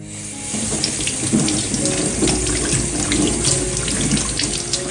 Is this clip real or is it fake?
real